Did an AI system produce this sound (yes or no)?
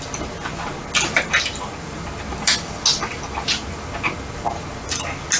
no